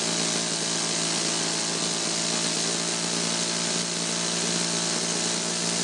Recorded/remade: recorded